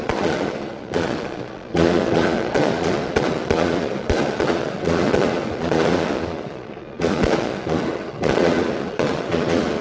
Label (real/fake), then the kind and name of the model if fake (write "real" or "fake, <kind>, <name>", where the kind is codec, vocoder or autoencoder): fake, vocoder, Vocos